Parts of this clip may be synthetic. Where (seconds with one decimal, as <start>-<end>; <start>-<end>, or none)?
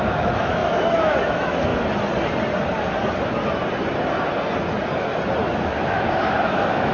0.0-1.7; 5.5-6.9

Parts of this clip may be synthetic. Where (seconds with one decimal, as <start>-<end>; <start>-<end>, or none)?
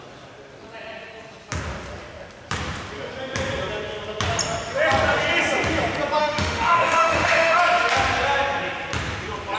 6.2-7.6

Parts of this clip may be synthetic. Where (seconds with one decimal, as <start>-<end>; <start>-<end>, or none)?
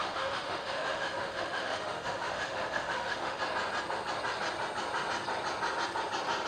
0.0-3.4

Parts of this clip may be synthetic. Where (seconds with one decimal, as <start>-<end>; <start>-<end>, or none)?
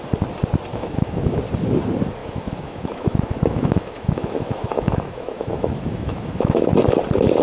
0.7-1.4; 2.2-6.6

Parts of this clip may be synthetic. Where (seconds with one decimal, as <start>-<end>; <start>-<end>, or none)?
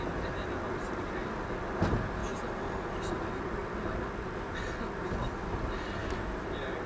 6.0-6.5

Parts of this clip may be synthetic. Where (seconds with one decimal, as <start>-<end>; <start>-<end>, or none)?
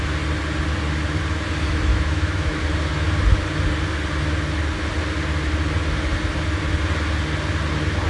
1.9-2.6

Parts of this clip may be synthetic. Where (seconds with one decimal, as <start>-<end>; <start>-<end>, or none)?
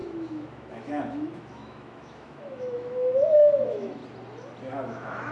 0.0-4.0; 4.7-5.3